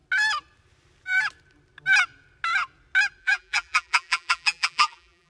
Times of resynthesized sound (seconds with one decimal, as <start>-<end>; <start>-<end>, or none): 3.2-5.3